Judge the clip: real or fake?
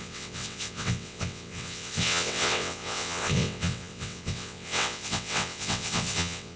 fake